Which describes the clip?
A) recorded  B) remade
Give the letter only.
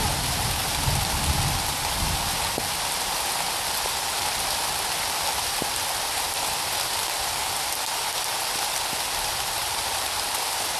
B